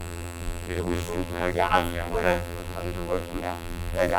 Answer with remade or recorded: remade